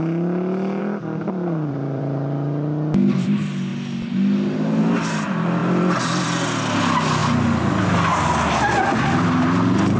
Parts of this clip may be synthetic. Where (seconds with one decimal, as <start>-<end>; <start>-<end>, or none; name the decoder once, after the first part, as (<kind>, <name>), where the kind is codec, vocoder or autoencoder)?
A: 0.8-2.0 (vocoder, BigVGAN v2); 5.6-6.4